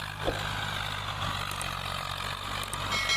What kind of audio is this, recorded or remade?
recorded